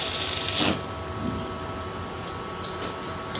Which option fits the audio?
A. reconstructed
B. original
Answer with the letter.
B